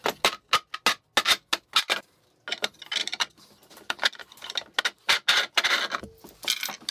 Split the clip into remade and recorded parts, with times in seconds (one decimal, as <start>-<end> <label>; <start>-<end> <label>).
0.0-6.9 recorded